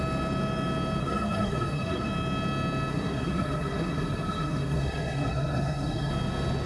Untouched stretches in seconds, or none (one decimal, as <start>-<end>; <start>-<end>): 0.0-1.0; 2.1-2.9; 6.1-6.7